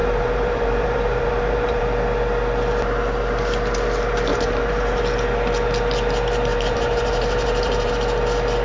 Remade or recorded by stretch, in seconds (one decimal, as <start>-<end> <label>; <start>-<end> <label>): 0.0-1.8 remade; 1.8-4.3 recorded; 4.3-5.0 remade; 5.0-6.5 recorded; 6.5-7.9 remade; 7.9-8.6 recorded